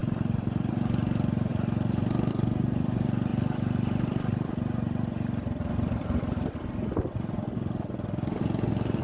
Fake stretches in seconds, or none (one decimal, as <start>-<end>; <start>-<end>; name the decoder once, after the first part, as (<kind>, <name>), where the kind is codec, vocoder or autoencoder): none